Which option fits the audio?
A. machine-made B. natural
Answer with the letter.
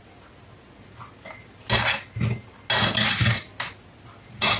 B